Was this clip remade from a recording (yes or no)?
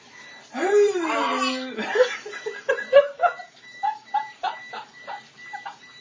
yes